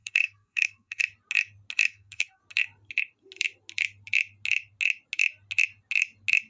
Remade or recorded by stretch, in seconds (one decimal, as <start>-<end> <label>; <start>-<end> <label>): 0.0-1.0 remade; 1.0-1.9 recorded; 1.9-2.4 remade; 2.4-6.5 recorded